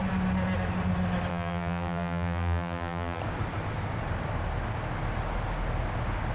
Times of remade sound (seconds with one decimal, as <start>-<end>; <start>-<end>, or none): 1.3-3.2